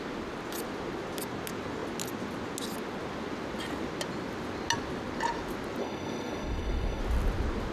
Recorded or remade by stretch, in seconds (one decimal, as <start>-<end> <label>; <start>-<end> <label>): 0.0-5.8 recorded; 5.8-7.0 remade; 7.0-7.7 recorded